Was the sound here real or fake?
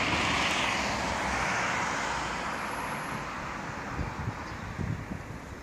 real